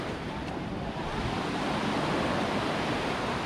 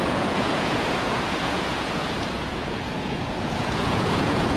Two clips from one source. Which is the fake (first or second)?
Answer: second